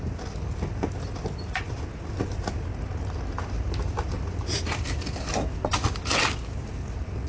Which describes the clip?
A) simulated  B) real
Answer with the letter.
B